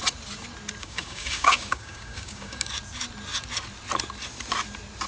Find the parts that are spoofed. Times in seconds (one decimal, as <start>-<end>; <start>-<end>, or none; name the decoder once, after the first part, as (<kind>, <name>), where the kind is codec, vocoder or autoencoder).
0.8-2.7 (codec, DAC)